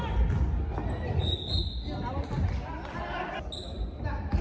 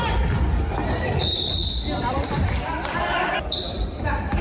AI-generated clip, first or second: second